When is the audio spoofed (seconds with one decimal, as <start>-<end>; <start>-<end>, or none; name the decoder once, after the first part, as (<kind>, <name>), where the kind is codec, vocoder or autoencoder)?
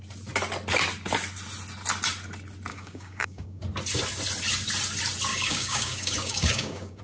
2.7-3.6 (codec, DAC); 5.3-7.0